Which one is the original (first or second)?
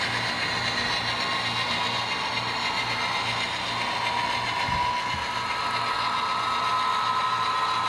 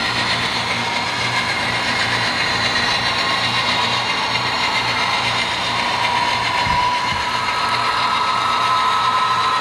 first